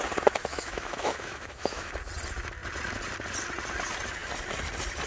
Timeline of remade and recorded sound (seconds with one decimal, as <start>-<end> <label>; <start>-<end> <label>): 0.0-0.5 recorded; 0.5-1.9 remade; 1.9-5.1 recorded